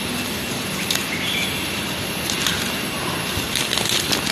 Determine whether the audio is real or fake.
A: real